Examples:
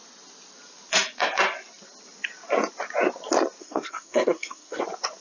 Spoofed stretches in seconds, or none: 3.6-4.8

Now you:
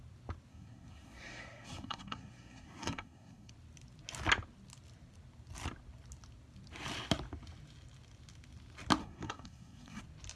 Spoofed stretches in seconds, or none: 0.5-3.5; 9.0-10.0

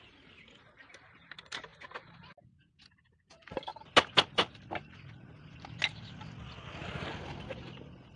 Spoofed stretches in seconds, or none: none